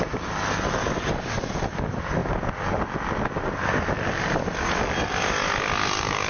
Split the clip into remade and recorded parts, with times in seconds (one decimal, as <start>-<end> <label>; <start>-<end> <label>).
0.0-6.3 recorded